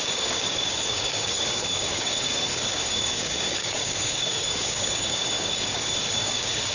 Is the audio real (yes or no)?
no